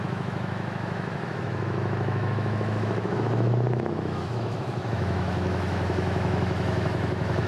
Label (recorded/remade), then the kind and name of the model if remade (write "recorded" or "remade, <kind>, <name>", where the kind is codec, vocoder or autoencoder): remade, autoencoder, DAC-VAE